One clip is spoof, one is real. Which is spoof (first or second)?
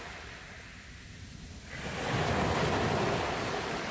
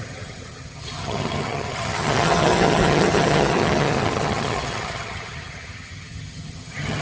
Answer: second